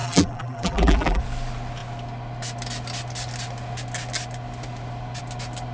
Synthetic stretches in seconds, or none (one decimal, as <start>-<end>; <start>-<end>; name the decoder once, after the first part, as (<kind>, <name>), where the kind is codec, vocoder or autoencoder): 0.0-1.2 (vocoder, BigVGAN v2)

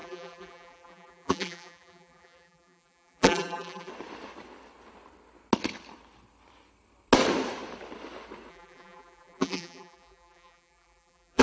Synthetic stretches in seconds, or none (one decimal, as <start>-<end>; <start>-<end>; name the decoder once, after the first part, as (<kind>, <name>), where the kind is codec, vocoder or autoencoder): 0.0-3.9 (vocoder, BigVGAN v2); 8.5-11.4